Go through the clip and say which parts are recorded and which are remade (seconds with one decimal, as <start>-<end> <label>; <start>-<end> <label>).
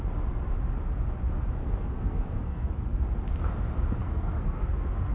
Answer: 0.0-1.6 recorded; 1.6-2.7 remade; 2.7-4.0 recorded; 4.0-5.1 remade